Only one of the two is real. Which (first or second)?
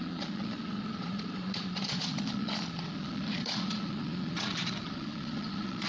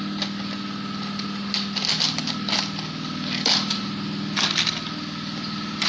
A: second